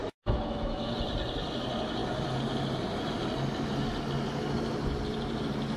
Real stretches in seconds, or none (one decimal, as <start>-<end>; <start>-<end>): 0.9-5.8